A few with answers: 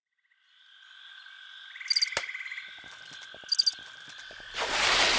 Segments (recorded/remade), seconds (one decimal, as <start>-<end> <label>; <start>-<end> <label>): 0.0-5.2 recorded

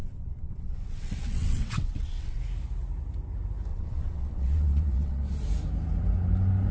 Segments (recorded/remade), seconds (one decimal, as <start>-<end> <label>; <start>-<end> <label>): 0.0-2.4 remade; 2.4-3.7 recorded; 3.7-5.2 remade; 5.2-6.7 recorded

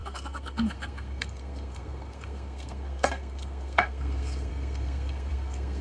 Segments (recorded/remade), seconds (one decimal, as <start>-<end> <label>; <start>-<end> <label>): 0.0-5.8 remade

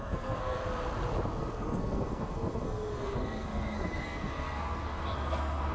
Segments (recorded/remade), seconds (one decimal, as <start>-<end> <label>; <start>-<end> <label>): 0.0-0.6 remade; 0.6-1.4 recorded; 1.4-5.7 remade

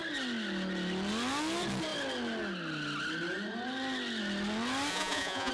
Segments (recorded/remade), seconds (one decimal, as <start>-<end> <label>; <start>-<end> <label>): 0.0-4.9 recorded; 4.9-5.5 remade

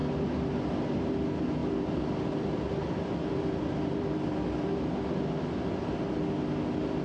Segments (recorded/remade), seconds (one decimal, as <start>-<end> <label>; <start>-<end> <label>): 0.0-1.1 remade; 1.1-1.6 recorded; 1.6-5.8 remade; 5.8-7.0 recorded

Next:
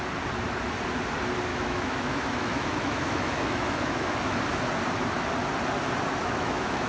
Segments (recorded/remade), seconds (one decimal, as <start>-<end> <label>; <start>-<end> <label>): 0.0-1.5 recorded; 1.5-4.4 remade; 4.4-6.2 recorded; 6.2-6.9 remade